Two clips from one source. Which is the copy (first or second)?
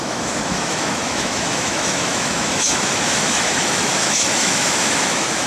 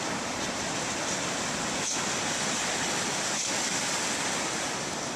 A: first